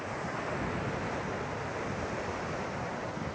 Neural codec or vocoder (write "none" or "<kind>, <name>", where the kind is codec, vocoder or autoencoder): none